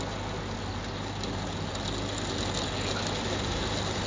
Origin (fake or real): real